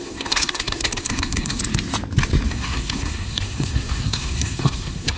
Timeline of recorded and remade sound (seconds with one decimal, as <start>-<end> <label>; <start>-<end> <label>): 0.0-1.6 remade; 1.6-2.5 recorded; 2.5-5.2 remade